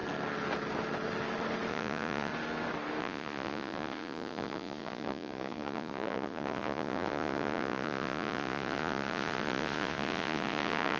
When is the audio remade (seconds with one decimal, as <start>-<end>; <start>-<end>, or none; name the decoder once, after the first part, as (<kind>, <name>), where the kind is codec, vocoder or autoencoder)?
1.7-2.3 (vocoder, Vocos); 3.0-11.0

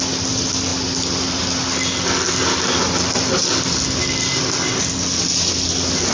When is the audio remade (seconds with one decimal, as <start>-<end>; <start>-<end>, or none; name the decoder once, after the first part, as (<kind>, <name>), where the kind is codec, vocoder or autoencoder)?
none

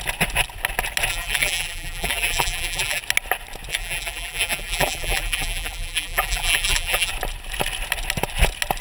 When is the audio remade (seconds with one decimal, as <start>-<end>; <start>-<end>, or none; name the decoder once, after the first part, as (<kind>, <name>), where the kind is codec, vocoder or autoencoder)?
1.1-3.0 (vocoder, BigVGAN v2); 3.7-7.1

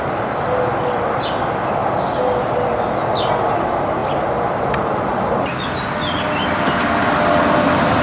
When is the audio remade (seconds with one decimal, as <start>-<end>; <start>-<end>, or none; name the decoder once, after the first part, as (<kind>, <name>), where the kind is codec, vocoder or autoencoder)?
none

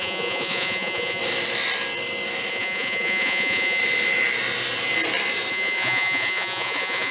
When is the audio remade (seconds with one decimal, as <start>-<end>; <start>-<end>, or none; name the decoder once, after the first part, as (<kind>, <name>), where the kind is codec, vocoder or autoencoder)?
0.0-1.2 (vocoder, Vocos); 2.5-3.8; 5.5-7.1